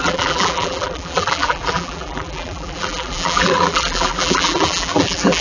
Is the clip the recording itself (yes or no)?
no